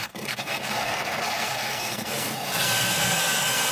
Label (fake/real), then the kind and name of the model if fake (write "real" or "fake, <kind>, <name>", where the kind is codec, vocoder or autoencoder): fake, codec, SNAC